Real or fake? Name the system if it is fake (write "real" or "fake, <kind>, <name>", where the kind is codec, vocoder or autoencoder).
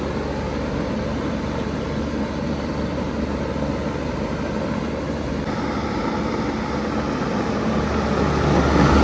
real